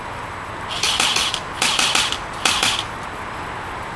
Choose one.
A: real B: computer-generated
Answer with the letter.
A